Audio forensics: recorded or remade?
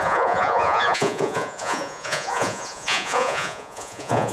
remade